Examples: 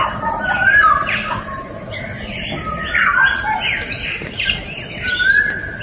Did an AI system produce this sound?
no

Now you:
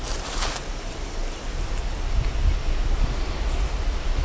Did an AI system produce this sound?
no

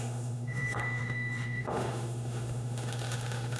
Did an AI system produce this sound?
yes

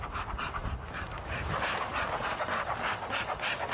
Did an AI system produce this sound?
no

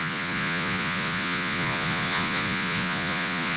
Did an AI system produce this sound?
yes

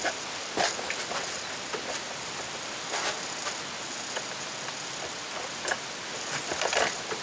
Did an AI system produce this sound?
no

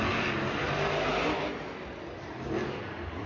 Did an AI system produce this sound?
no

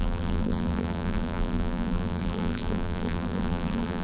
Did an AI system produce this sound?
yes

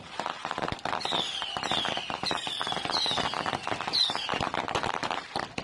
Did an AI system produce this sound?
yes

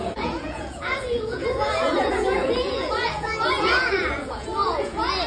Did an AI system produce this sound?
yes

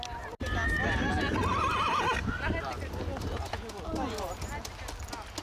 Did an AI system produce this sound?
no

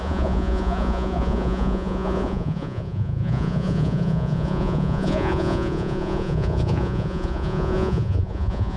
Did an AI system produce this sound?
yes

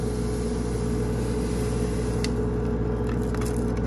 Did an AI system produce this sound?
no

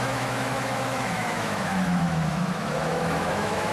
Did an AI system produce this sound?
yes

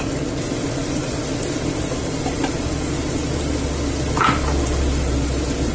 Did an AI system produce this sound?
no